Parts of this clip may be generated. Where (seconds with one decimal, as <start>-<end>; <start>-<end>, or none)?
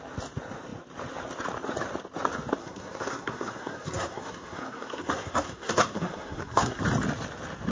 2.6-6.8